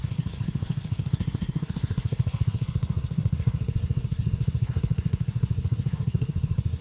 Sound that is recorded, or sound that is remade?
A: remade